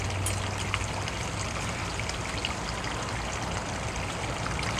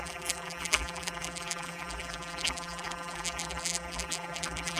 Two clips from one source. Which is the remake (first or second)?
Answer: second